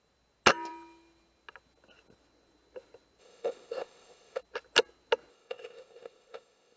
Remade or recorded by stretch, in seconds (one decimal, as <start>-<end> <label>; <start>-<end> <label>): 0.0-3.2 recorded; 3.2-4.4 remade; 4.4-5.3 recorded; 5.3-6.8 remade